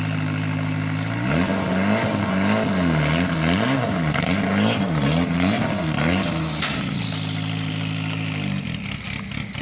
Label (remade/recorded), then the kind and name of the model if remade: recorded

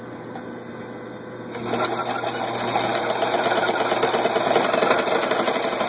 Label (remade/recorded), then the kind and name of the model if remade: recorded